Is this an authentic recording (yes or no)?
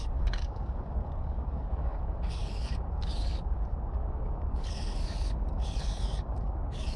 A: no